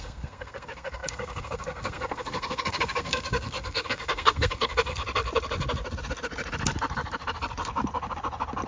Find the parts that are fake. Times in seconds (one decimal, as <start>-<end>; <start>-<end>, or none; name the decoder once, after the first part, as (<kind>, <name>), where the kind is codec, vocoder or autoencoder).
0.0-5.0 (codec, SNAC)